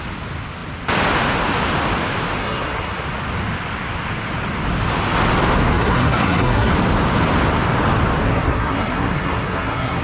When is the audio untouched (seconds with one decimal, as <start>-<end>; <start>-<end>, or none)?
0.0-2.4; 3.0-5.7; 6.7-8.2

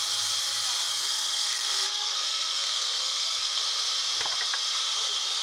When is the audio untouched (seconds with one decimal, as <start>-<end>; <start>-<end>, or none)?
0.0-0.9; 3.6-5.4

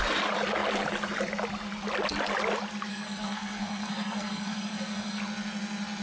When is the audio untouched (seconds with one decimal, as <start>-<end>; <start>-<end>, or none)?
0.0-2.9; 5.2-6.0

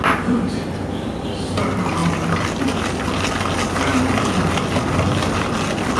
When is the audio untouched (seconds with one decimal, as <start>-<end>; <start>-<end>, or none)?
0.0-6.0